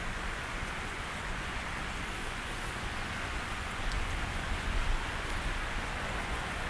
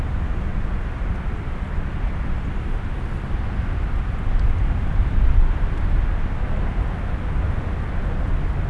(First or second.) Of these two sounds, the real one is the second